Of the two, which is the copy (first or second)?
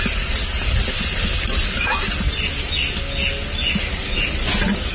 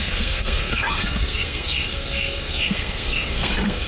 second